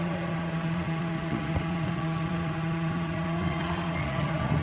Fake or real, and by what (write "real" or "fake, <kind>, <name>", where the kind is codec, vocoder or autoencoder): fake, vocoder, Vocos